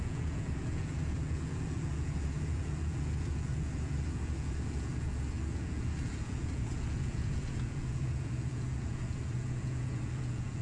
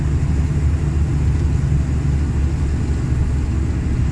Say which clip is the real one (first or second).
second